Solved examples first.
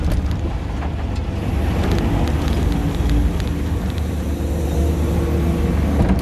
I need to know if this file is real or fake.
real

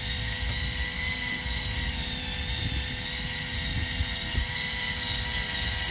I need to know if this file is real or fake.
real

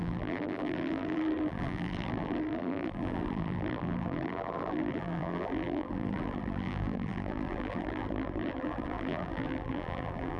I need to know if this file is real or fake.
fake